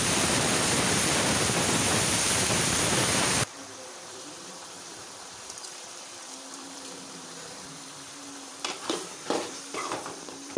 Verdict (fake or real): fake